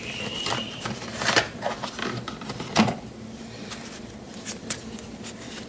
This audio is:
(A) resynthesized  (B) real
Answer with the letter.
A